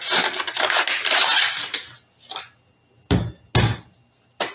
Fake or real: real